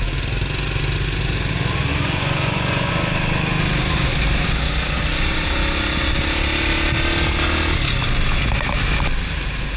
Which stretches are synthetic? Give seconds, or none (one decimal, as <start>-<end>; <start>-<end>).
1.9-2.9